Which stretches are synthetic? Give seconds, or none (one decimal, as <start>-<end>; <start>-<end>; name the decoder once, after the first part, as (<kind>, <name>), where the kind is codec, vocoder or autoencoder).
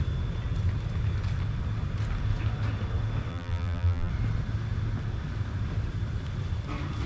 3.3-4.1 (vocoder, BigVGAN v2)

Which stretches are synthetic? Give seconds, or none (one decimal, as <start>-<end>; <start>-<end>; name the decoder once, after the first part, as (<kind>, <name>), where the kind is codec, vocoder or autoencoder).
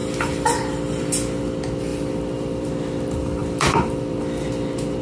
0.0-1.4 (vocoder, BigVGAN v2); 1.9-2.7; 3.4-4.2